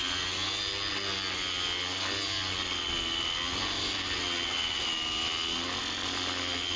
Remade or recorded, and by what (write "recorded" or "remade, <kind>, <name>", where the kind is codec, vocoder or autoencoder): recorded